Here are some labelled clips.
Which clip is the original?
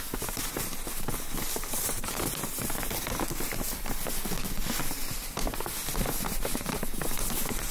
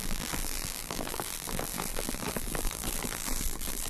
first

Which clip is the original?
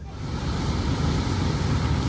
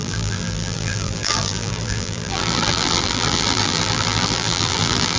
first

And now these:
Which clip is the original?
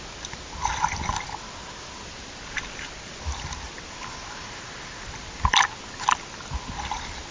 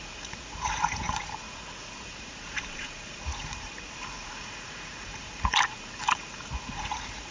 first